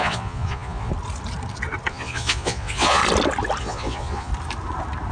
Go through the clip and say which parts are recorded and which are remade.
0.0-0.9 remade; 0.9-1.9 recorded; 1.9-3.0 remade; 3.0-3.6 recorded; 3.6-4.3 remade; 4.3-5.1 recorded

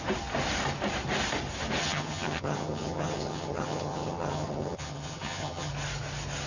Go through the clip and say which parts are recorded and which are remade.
0.0-1.8 recorded; 1.8-5.7 remade; 5.7-6.5 recorded

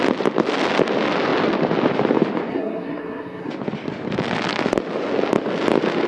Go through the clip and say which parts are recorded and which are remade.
0.0-2.5 recorded; 2.5-3.5 remade; 3.5-6.1 recorded